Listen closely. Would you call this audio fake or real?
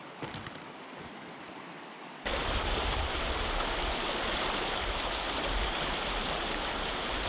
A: real